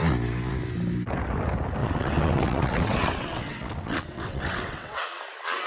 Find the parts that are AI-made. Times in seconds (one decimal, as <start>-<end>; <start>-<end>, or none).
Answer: 1.8-5.2